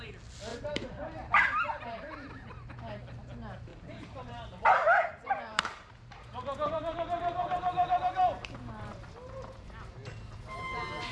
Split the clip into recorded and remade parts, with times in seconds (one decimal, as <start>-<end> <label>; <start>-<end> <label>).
0.0-0.5 recorded; 0.5-2.1 remade; 2.1-3.7 recorded; 3.7-8.9 remade; 8.9-11.1 recorded